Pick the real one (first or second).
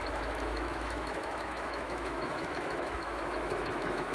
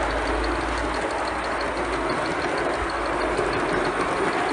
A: second